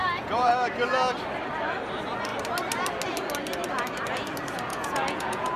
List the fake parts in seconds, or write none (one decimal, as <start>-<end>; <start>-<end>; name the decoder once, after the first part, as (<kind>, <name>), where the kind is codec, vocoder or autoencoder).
0.0-0.5 (vocoder, Vocos); 4.7-5.6